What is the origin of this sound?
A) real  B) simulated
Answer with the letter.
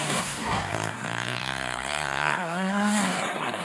B